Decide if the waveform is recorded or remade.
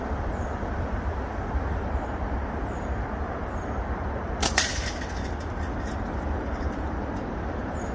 remade